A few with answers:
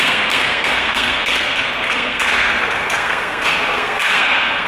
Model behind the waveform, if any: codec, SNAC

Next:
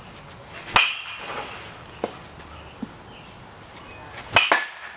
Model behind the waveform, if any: none